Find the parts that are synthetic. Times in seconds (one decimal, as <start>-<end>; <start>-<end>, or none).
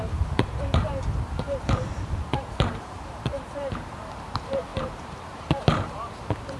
0.0-6.6